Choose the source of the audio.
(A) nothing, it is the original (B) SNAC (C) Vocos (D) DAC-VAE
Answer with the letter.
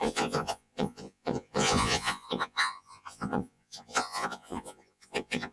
C